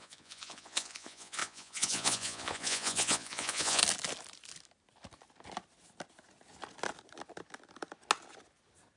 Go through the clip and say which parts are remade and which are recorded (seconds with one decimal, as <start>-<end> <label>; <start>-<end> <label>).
0.0-3.8 remade; 3.8-9.0 recorded